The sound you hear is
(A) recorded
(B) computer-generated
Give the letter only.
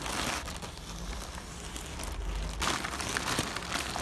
A